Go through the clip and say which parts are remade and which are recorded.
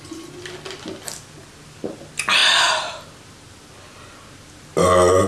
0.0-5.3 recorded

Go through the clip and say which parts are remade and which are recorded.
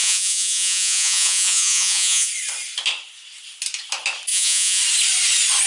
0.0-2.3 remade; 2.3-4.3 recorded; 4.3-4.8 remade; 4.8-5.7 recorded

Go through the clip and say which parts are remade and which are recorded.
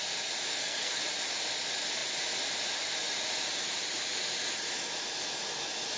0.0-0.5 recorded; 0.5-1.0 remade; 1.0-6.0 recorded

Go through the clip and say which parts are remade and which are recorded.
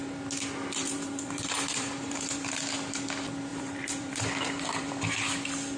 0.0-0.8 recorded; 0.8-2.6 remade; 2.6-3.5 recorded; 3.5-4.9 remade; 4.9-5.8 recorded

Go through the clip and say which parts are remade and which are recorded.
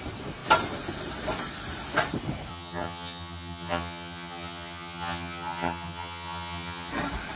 0.0-2.5 recorded; 2.5-6.9 remade; 6.9-7.4 recorded